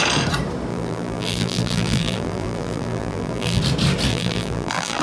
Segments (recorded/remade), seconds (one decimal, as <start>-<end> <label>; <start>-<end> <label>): 0.0-0.7 recorded; 0.7-3.6 remade; 3.6-4.1 recorded; 4.1-5.0 remade